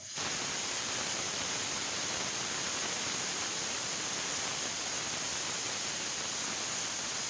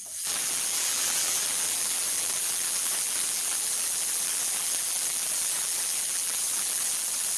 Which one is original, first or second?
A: first